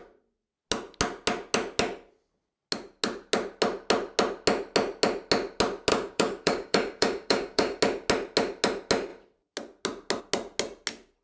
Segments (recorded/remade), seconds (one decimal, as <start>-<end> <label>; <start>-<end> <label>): 0.0-5.9 recorded; 5.9-7.8 remade; 7.8-11.2 recorded